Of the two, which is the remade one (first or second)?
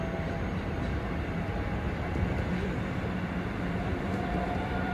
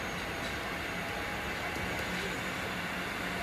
first